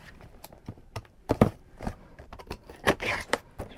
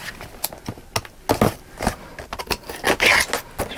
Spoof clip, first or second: first